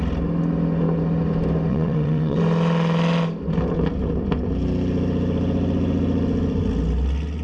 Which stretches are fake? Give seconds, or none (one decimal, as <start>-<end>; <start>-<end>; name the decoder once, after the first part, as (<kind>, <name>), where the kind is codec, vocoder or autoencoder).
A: 1.7-2.4 (vocoder, WaveNeXt)